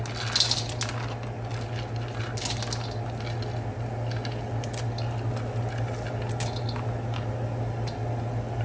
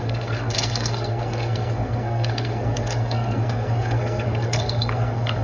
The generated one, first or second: second